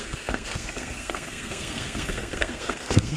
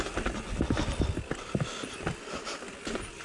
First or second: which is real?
second